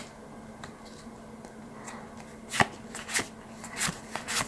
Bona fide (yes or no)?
yes